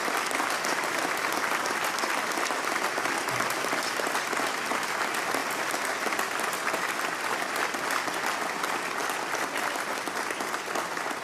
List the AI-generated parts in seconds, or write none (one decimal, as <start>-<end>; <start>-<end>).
none